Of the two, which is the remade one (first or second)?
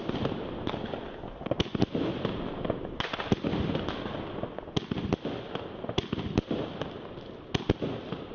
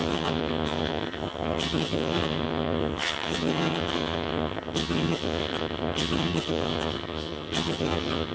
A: second